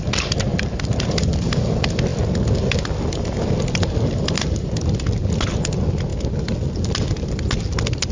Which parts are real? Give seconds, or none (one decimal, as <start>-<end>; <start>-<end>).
0.0-0.5; 1.5-2.1; 4.8-6.1; 6.9-8.1